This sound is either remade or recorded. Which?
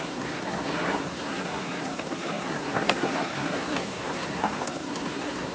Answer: remade